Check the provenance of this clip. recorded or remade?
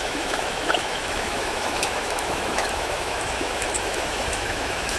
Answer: remade